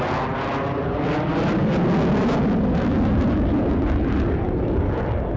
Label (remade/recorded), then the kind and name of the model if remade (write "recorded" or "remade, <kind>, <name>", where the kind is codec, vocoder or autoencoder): recorded